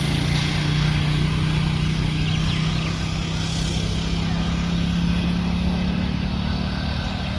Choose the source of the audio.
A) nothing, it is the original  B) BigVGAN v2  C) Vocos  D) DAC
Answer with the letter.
A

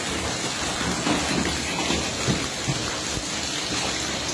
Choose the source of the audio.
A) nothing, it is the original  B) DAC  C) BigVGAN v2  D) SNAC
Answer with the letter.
A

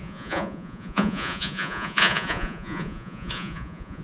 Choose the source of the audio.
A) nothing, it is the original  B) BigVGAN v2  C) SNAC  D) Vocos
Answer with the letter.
D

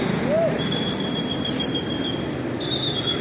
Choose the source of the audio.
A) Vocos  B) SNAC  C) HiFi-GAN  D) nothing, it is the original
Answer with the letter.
D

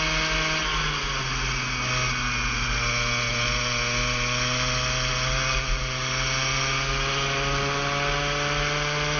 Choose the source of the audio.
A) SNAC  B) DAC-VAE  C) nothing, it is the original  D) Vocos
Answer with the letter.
C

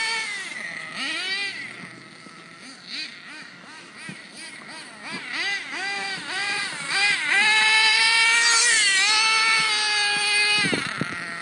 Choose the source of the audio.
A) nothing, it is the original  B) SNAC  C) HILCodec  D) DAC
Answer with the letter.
A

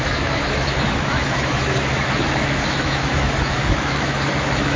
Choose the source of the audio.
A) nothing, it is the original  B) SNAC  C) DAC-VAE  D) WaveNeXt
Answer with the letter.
C